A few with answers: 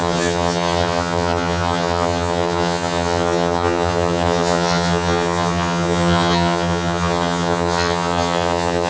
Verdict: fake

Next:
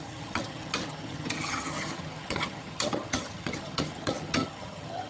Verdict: fake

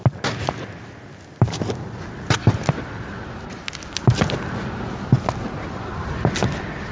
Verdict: real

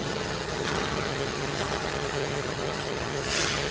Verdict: fake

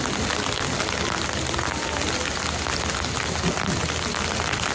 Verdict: real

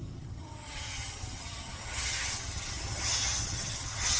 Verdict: fake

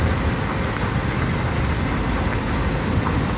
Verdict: real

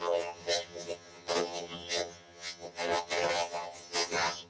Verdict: fake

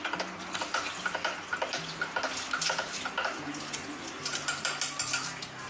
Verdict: real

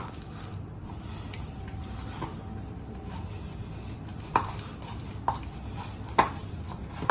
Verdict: real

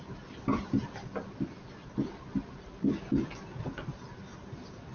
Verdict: real